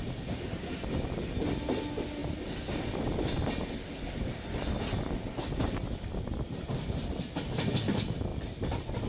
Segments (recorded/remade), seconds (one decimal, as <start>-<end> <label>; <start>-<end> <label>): 0.0-9.1 recorded